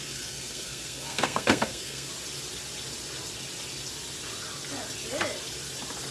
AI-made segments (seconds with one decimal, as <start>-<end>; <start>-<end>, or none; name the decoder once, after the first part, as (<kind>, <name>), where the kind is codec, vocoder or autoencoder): 0.0-2.1 (codec, SNAC)